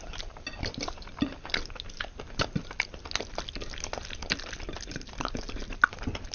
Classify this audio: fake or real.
real